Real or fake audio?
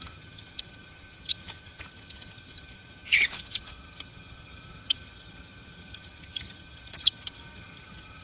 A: fake